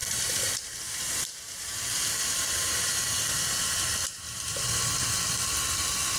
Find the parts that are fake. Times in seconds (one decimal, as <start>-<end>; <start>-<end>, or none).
0.0-3.1; 4.0-4.6